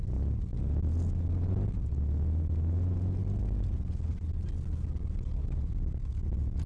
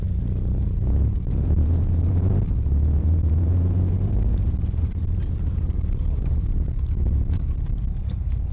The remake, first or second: second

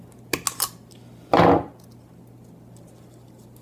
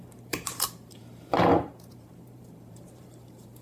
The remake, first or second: second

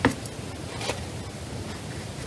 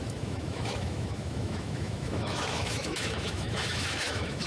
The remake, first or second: second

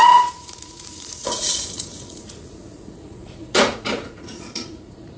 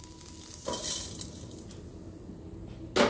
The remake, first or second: first